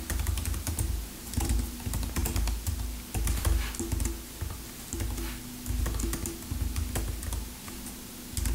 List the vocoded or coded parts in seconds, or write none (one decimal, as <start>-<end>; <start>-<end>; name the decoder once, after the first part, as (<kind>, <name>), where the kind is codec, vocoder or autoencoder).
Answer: 0.0-1.5 (vocoder, BigVGAN v2)